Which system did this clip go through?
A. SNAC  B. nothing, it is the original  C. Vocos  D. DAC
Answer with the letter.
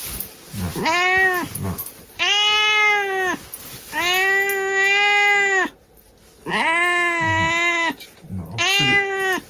B